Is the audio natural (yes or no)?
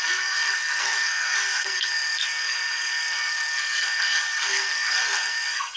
no